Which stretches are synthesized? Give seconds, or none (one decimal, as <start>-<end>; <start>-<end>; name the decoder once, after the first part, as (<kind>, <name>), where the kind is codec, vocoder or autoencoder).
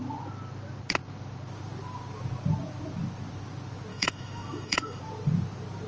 3.9-5.0 (autoencoder, DAC-VAE)